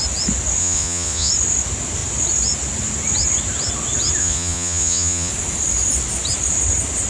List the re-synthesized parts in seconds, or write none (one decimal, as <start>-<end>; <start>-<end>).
0.6-1.3; 4.2-5.3